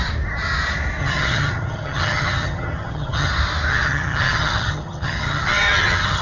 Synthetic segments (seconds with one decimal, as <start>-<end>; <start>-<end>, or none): 1.0-3.3; 3.7-6.2